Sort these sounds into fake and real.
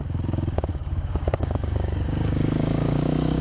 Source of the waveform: fake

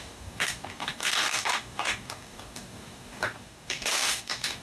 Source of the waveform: fake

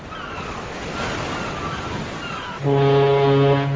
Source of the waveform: real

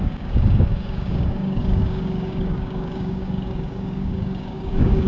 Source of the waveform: fake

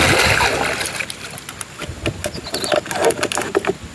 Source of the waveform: real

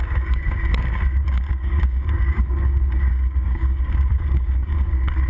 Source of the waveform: fake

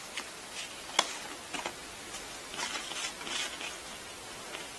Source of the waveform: real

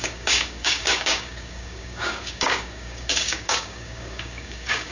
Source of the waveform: fake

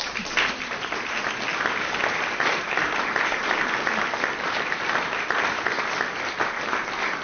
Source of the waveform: real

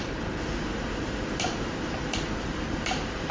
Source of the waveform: real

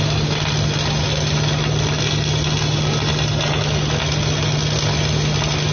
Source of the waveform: real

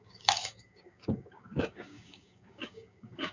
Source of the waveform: fake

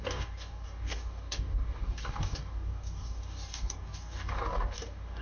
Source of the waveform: fake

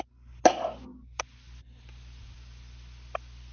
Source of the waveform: real